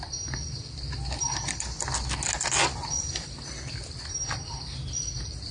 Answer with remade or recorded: recorded